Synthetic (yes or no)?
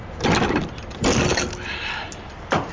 no